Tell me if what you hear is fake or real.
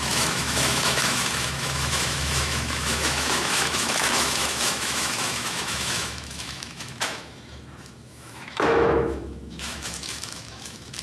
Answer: fake